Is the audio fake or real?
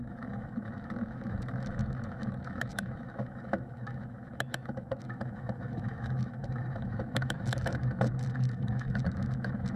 fake